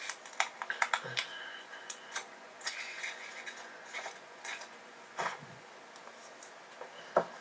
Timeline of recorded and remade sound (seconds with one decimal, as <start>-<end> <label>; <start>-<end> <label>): 0.0-1.3 recorded; 1.3-5.7 remade; 5.7-7.4 recorded